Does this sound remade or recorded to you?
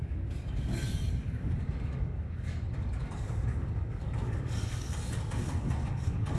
remade